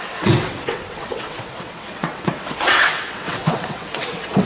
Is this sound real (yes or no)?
no